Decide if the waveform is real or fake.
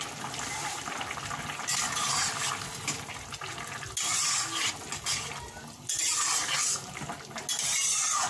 real